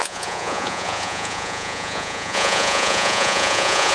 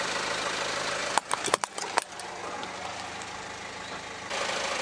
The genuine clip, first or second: second